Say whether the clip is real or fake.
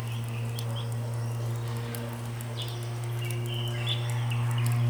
real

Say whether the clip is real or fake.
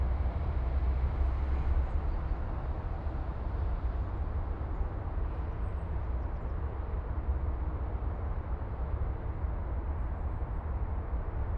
real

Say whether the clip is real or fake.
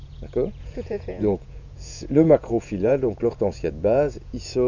fake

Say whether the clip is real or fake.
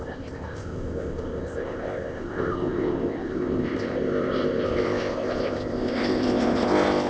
fake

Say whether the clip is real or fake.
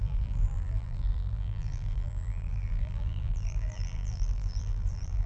fake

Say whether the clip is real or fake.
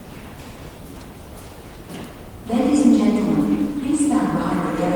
real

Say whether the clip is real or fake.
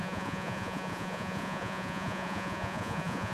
fake